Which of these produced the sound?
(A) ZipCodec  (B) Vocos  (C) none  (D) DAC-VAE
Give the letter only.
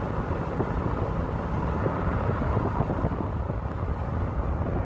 C